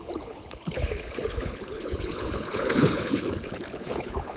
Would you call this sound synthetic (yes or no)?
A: yes